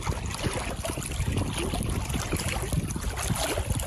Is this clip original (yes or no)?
yes